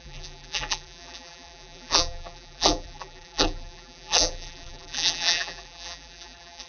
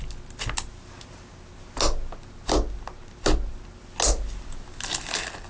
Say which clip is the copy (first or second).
first